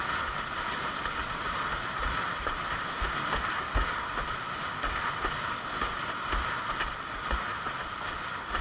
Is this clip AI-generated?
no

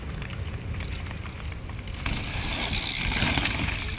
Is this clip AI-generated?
no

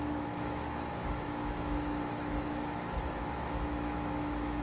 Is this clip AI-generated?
yes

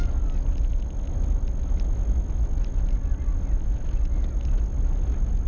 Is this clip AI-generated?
no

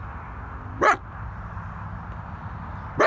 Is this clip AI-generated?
no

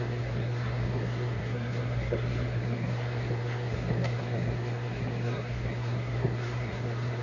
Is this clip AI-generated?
yes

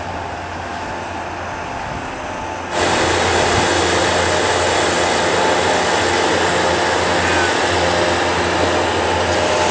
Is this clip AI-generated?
no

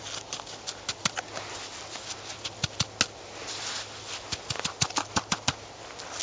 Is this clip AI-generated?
no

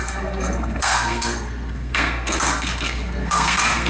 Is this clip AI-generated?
yes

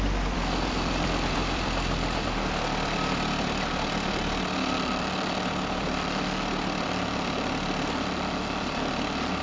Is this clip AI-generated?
yes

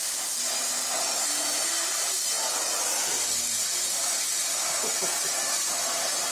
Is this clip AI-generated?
no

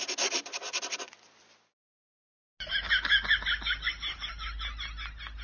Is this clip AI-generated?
no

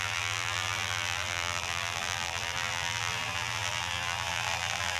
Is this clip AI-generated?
yes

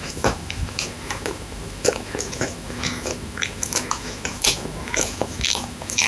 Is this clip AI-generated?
yes